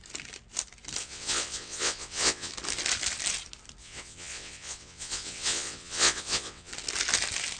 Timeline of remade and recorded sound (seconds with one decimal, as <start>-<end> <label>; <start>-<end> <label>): 0.0-1.0 recorded; 1.0-2.5 remade; 2.5-3.8 recorded; 3.8-6.7 remade; 6.7-7.6 recorded